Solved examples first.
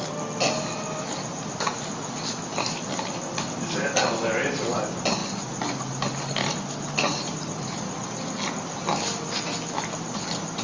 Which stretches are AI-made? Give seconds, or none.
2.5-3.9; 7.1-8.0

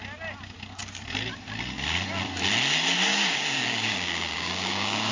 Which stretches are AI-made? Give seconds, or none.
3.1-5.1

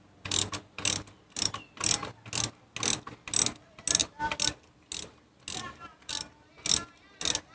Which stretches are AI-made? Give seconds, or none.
none

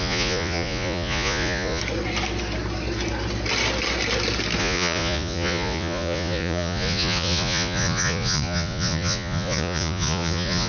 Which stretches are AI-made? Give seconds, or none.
0.0-1.8; 4.6-10.7

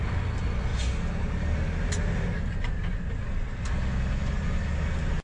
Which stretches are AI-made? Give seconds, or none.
none

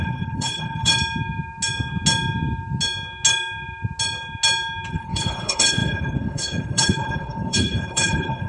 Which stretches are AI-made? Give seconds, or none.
0.0-0.9; 4.9-8.5

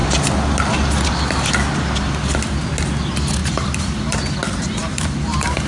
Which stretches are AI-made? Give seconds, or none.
3.4-4.2; 4.8-5.7

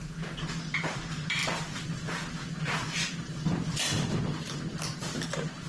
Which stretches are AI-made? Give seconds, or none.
1.4-4.6